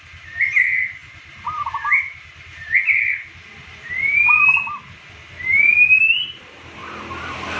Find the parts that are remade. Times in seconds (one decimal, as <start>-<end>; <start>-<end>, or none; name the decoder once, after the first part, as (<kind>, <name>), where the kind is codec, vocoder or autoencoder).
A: none